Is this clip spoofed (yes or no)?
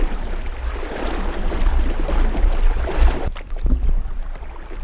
no